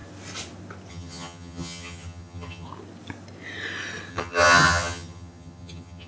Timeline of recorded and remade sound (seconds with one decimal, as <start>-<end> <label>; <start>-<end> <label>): 0.0-0.9 recorded; 0.9-2.7 remade; 2.7-4.1 recorded; 4.1-6.1 remade